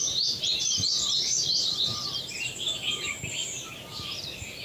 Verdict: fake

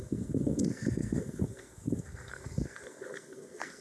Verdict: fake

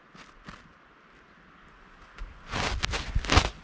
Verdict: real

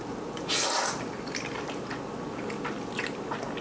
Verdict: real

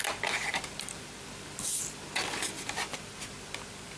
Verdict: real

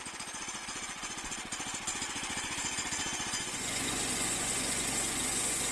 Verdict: fake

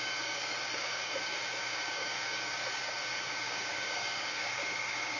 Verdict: fake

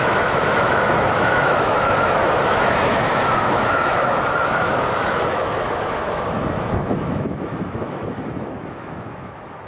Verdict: fake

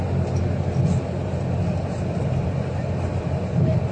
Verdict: real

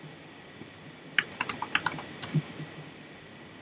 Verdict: real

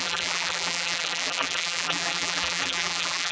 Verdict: fake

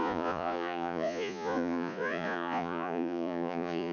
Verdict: fake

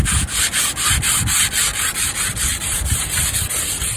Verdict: real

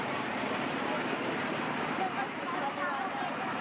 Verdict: fake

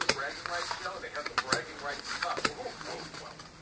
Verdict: real